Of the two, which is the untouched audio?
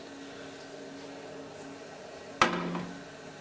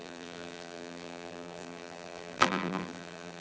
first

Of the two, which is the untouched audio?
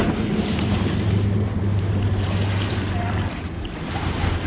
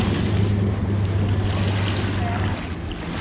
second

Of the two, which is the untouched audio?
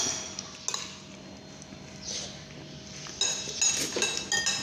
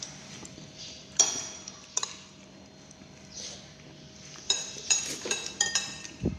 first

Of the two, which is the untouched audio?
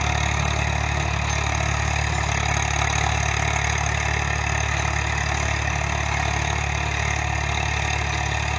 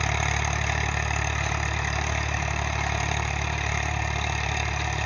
first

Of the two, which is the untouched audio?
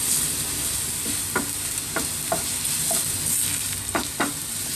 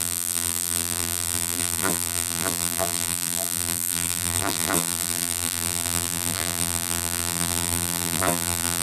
first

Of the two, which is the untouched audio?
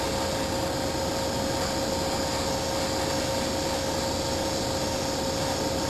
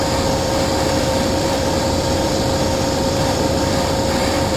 first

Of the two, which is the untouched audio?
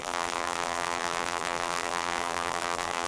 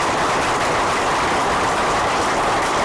second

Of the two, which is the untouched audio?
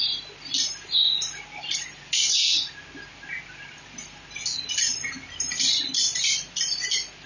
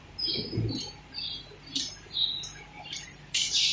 first